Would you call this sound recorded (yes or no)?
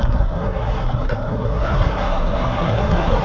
no